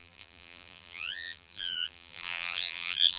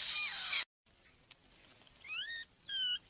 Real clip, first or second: second